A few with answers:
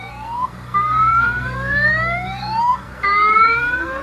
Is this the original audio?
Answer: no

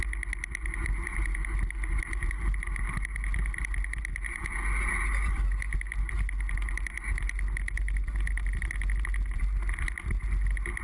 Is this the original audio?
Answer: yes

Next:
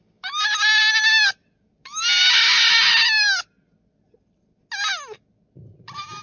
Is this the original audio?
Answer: yes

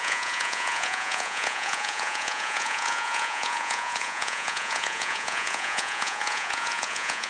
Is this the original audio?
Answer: no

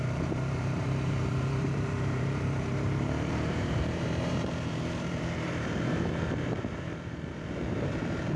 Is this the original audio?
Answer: no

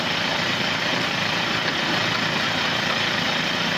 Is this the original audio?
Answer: no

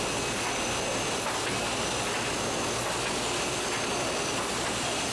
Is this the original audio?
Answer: yes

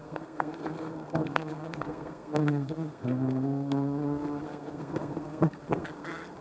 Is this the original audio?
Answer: no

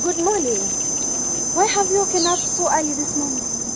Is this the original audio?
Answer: yes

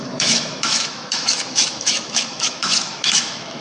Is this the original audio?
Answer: no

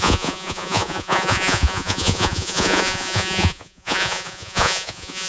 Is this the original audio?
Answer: no